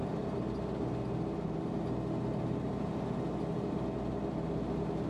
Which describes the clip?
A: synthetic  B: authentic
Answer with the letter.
B